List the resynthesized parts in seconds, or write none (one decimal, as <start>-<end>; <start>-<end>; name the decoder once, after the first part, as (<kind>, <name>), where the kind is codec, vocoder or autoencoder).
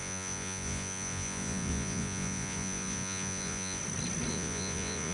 0.0-3.8 (vocoder, Vocos); 4.3-5.1